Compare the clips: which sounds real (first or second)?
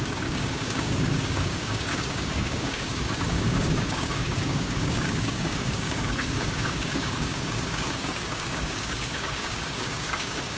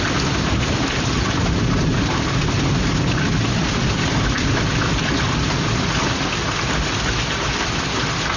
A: second